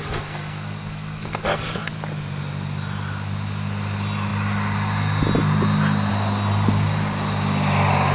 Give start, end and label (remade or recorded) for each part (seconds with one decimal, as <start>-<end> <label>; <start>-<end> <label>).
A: 0.0-1.9 remade; 1.9-8.1 recorded